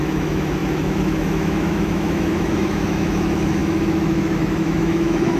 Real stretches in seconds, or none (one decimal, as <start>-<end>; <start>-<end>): none